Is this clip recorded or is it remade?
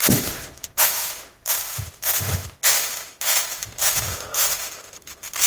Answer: remade